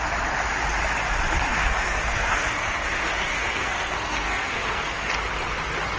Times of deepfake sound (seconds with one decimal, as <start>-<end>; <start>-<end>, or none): 1.5-5.1